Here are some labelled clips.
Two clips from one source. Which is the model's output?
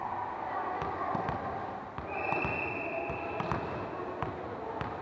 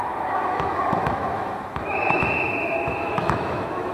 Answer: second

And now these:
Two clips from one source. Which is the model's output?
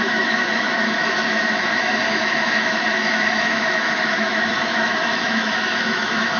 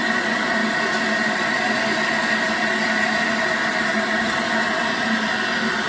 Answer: first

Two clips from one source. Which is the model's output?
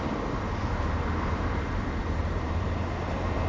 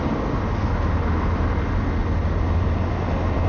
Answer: first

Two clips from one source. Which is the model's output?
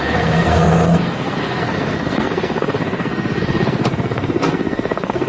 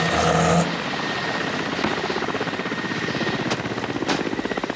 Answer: first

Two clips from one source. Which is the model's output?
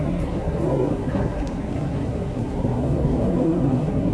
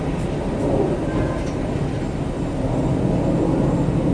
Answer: first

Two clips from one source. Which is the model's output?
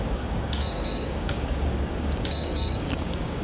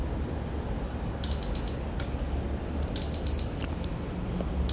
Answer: first